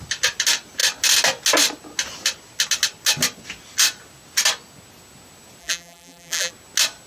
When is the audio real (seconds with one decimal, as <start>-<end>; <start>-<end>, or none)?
0.0-5.6; 6.5-7.1